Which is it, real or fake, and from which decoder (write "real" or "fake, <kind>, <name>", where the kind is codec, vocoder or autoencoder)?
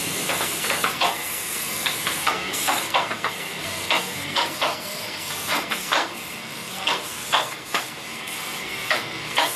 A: fake, codec, SNAC